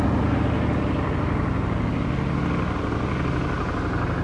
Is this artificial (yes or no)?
no